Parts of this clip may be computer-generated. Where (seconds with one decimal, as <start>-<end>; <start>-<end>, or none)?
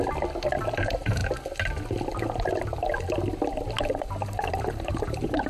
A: 0.6-1.2; 4.0-5.5